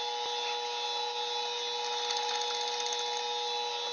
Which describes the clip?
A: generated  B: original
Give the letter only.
B